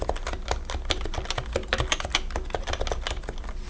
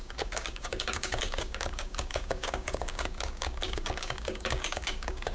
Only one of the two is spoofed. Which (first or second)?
second